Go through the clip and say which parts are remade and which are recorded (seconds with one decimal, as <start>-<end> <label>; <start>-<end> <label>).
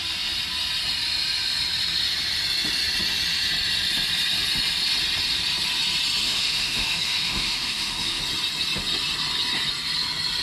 0.0-6.2 recorded; 6.2-8.2 remade; 8.2-10.4 recorded